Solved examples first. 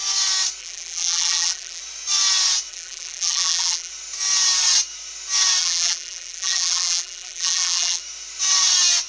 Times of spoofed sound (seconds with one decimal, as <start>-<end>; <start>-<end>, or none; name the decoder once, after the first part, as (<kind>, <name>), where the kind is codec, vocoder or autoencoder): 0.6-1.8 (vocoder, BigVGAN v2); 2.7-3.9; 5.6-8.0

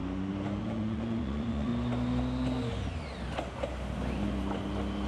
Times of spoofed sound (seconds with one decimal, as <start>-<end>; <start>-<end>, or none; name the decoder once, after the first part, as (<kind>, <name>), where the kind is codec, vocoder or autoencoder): 0.6-1.7 (vocoder, Vocos)

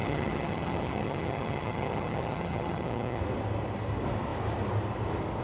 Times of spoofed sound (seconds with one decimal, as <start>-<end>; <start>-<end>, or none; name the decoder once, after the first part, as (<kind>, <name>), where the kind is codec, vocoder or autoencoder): 0.0-3.2 (vocoder, HiFi-GAN)

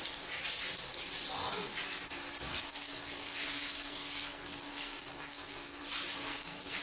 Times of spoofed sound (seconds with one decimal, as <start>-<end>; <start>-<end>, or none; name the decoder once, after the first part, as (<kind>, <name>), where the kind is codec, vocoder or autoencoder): 2.5-5.8 (codec, SNAC); 6.2-6.8